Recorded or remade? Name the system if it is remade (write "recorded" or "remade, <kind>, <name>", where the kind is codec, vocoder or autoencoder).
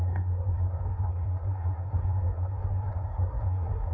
remade, codec, SNAC